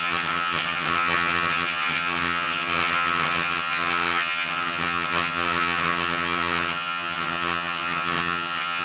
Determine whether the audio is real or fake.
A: fake